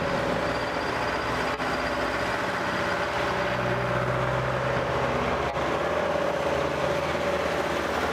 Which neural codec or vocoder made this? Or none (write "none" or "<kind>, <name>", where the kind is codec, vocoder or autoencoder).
none